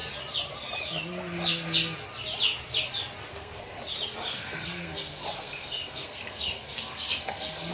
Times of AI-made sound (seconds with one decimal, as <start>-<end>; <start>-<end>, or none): 3.3-3.8; 4.3-7.7